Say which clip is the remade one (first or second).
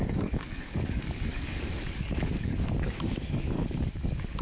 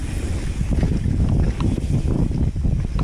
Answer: first